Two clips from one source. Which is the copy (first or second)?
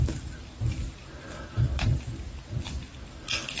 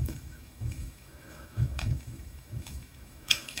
second